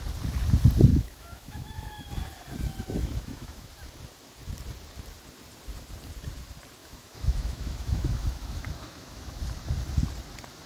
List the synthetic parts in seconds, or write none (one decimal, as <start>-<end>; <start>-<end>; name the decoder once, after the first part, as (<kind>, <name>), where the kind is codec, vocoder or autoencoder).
0.9-2.1 (autoencoder, DAC-VAE); 3.0-3.7; 6.8-9.4